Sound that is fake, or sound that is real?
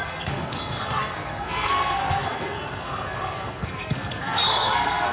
fake